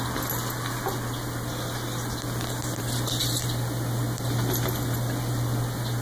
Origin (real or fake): real